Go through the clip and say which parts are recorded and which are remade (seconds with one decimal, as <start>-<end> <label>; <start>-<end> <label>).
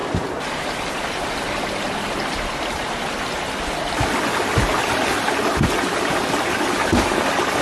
0.0-7.6 recorded